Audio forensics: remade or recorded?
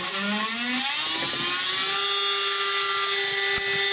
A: recorded